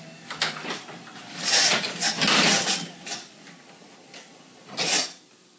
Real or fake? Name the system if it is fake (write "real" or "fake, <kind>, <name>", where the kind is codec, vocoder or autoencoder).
real